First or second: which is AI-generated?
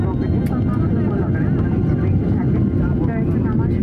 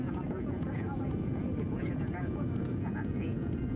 second